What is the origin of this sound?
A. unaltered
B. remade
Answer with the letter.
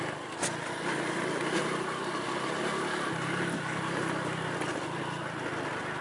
A